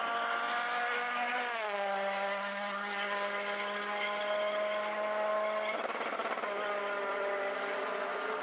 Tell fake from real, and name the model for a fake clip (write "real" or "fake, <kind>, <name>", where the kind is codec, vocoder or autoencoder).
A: real